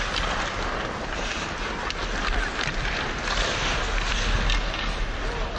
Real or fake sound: real